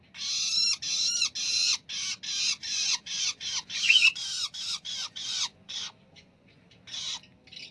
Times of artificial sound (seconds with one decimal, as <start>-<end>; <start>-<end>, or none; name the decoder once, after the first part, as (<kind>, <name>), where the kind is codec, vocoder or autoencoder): 2.6-6.6 (vocoder, Vocos)